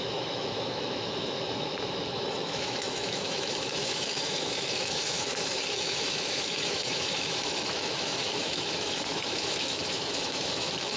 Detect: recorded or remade remade